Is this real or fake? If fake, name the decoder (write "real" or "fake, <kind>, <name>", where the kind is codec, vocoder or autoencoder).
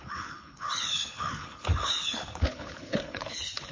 fake, codec, HILCodec